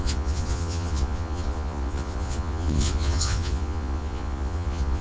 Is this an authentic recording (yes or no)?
no